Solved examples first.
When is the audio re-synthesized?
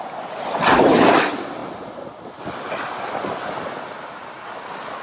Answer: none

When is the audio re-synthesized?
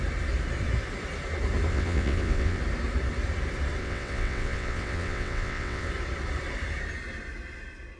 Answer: 1.7-2.6; 3.8-5.9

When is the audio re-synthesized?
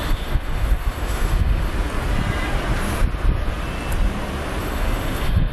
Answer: 0.0-1.7; 4.6-5.5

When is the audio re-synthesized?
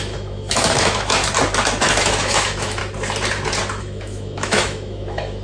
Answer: 0.0-1.2; 1.8-2.8; 3.8-5.4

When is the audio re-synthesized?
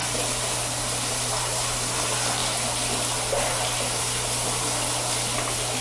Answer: none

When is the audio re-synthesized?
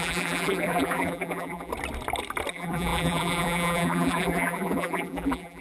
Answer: 0.0-1.7; 2.5-5.6